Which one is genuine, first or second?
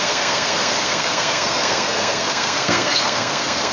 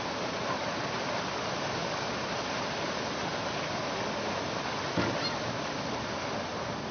second